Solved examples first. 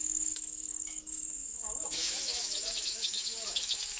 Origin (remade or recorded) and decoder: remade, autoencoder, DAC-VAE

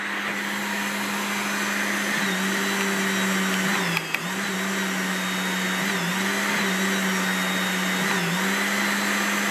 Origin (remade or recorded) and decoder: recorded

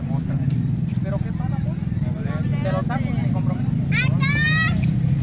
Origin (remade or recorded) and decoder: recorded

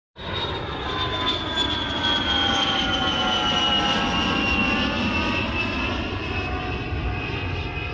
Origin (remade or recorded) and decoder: recorded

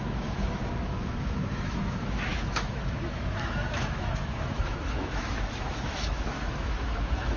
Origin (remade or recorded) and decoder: remade, autoencoder, DAC-VAE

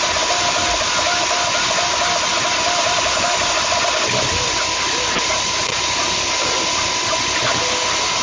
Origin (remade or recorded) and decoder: recorded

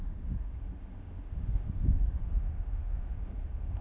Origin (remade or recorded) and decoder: remade, autoencoder, DAC-VAE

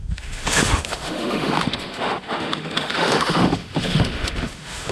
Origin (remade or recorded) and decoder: remade, autoencoder, DAC-VAE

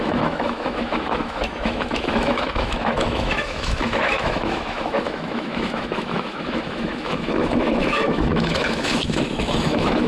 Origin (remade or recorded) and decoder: remade, autoencoder, DAC-VAE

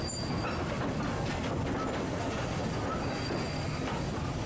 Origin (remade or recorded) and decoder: recorded